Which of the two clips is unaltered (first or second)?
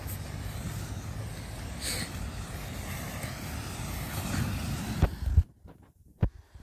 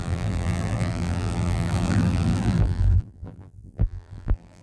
first